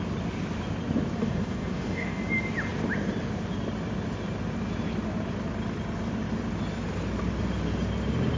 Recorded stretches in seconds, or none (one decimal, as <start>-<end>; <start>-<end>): 0.0-1.2; 2.2-8.4